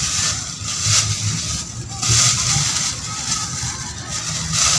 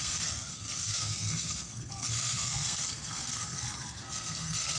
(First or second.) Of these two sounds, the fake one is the second